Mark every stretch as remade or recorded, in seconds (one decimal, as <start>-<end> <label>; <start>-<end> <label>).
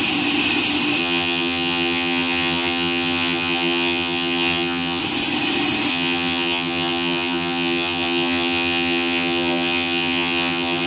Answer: 0.0-1.0 recorded; 1.0-5.0 remade; 5.0-5.9 recorded; 5.9-10.9 remade